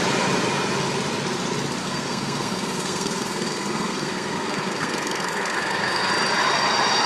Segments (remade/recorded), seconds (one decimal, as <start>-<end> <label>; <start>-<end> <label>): 0.0-1.8 recorded; 1.8-6.1 remade; 6.1-7.1 recorded